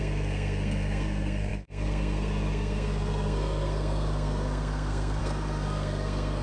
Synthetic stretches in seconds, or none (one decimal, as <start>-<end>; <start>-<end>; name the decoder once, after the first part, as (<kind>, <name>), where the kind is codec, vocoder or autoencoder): 0.0-6.4 (codec, SNAC)